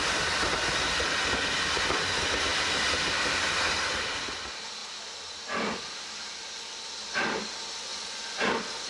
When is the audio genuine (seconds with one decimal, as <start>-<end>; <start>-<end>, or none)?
0.0-7.9; 8.5-8.9